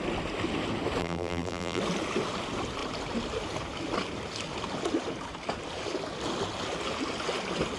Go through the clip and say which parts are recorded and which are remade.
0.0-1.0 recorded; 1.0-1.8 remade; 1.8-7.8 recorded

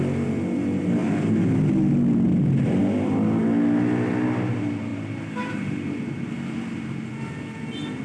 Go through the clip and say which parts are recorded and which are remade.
0.0-8.0 recorded

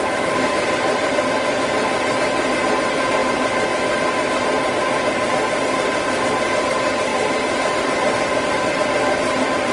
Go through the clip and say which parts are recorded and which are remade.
0.0-3.2 remade; 3.2-4.9 recorded; 4.9-9.7 remade

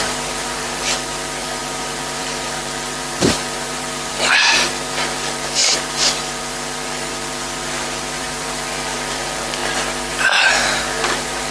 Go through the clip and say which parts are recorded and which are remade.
0.0-9.6 remade; 9.6-10.1 recorded; 10.1-11.5 remade

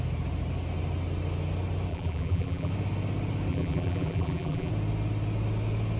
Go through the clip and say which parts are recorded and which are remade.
0.0-1.9 recorded; 1.9-2.7 remade; 2.7-3.5 recorded; 3.5-4.7 remade; 4.7-6.0 recorded

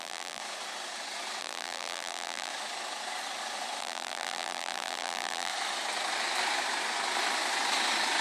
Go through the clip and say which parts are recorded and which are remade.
0.0-0.4 remade; 0.4-1.4 recorded; 1.4-2.5 remade; 2.5-3.8 recorded; 3.8-5.5 remade; 5.5-8.2 recorded

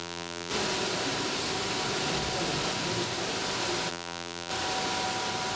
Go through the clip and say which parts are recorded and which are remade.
0.0-0.5 remade; 0.5-3.9 recorded; 3.9-4.5 remade; 4.5-5.6 recorded

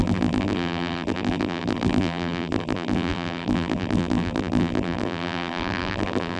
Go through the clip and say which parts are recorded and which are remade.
0.0-6.4 remade